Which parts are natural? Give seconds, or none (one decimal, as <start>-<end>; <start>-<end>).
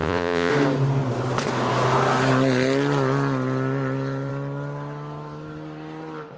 0.5-6.4